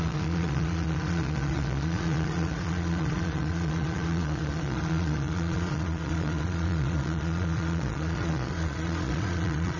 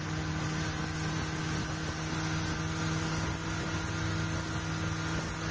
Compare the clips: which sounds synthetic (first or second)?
first